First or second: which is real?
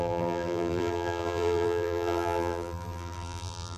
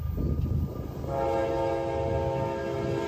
second